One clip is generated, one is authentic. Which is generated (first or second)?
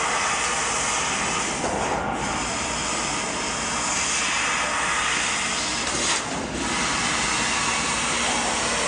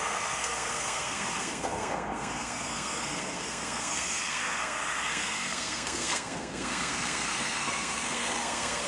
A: second